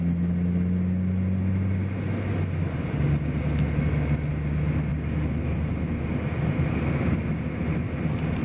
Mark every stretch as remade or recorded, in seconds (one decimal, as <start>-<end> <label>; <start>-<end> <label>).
0.0-8.4 recorded

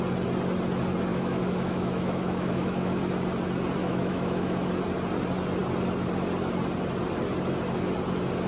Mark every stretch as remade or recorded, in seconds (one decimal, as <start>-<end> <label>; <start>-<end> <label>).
0.0-1.1 recorded; 1.1-3.0 remade; 3.0-3.8 recorded; 3.8-4.7 remade; 4.7-8.5 recorded

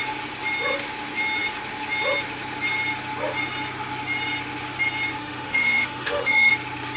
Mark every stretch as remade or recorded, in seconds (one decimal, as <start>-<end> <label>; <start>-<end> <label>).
0.0-5.2 recorded; 5.2-6.5 remade; 6.5-7.0 recorded

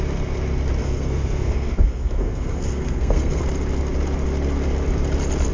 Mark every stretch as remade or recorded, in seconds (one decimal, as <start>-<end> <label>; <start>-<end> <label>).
0.0-0.8 recorded; 0.8-3.4 remade; 3.4-5.5 recorded

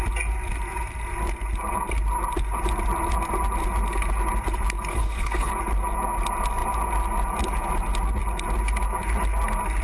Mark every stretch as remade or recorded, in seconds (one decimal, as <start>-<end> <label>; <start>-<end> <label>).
0.0-4.9 recorded; 4.9-5.5 remade; 5.5-9.8 recorded